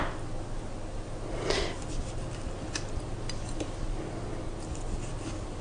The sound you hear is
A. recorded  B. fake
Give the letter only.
A